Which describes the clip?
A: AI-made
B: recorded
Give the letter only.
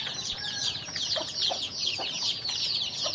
A